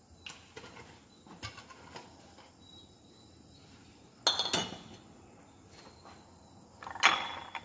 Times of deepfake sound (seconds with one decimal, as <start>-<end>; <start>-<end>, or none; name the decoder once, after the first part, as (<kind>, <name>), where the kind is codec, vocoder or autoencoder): none